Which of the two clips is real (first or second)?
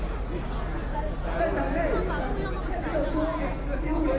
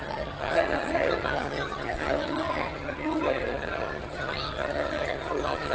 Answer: first